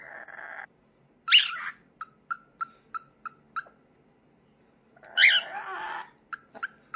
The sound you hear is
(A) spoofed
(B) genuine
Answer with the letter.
B